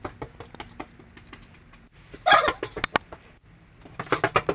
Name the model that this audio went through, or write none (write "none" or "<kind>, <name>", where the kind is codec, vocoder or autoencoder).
none